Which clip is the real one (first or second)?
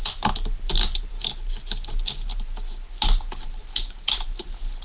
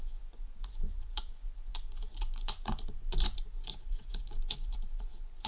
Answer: first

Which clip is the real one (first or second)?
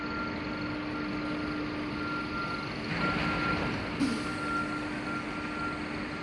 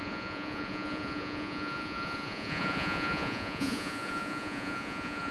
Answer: first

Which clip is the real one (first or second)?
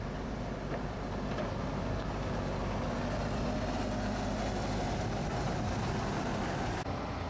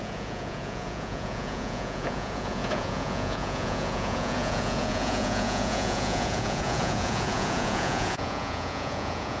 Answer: first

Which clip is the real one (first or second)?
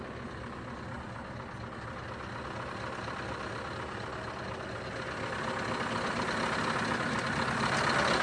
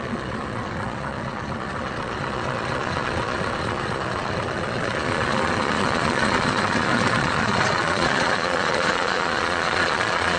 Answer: first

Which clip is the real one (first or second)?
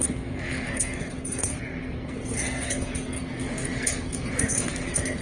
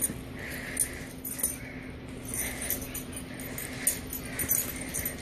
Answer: second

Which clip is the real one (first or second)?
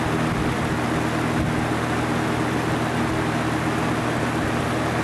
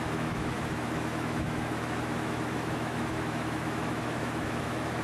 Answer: first